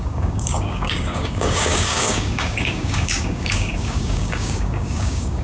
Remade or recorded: remade